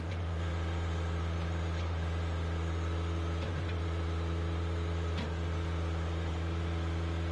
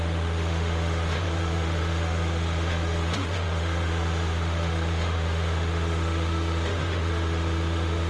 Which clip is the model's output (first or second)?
second